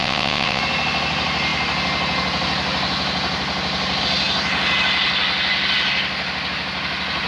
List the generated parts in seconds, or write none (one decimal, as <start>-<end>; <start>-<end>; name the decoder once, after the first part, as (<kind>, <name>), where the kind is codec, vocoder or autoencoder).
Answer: 0.0-0.6 (vocoder, WaveNeXt)